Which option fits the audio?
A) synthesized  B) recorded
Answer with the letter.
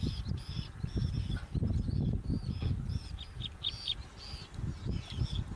B